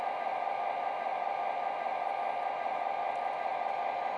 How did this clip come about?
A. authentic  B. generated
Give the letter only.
A